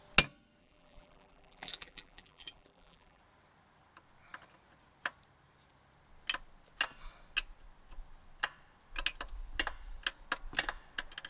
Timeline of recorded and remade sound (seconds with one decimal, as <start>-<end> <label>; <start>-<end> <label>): 0.0-0.6 recorded; 0.6-3.2 remade; 3.2-11.3 recorded